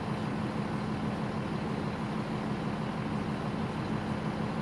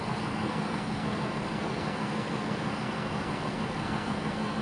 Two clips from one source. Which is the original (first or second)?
first